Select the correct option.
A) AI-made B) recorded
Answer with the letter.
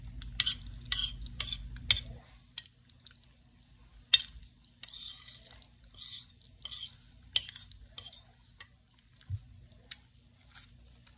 B